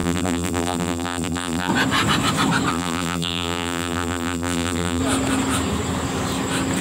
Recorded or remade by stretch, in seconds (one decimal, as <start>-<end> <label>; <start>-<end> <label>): 0.0-1.7 remade; 1.7-2.7 recorded; 2.7-5.0 remade; 5.0-6.8 recorded